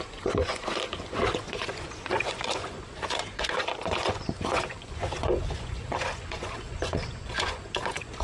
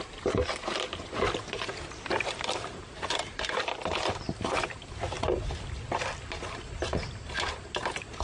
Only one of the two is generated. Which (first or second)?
first